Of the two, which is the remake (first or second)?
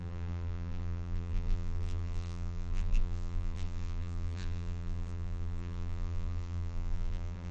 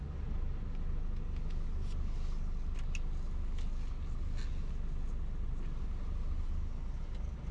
first